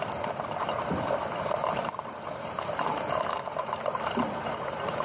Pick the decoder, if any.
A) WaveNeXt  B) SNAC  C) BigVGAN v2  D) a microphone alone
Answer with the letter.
D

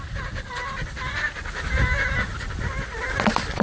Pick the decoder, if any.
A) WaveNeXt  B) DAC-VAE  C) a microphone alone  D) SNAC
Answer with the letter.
C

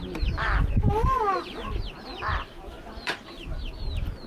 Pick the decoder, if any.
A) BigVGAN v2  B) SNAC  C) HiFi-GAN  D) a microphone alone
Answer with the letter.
D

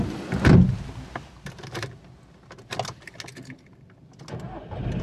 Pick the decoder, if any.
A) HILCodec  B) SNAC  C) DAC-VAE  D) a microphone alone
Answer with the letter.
D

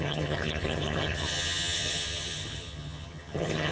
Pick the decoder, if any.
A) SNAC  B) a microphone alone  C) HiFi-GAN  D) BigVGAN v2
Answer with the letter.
C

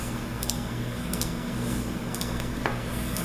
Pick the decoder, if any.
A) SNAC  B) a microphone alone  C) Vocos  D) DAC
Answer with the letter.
A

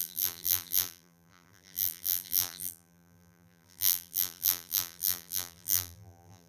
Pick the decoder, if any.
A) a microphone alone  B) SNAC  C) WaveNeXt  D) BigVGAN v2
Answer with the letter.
D